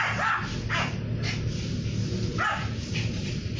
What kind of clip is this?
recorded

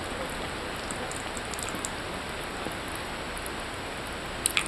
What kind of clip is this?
recorded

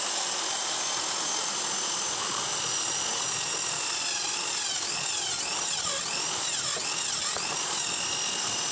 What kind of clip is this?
recorded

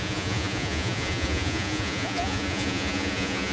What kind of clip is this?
remade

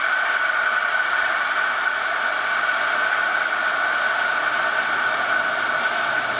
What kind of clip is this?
recorded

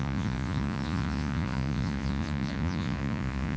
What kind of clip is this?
remade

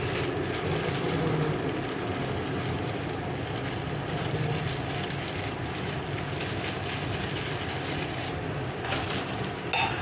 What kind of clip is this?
recorded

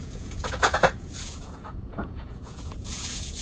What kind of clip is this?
remade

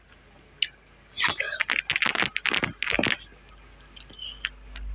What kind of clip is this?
recorded